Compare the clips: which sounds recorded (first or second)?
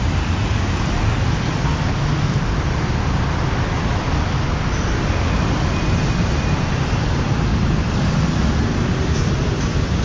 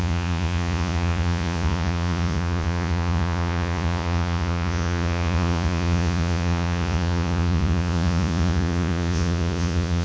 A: first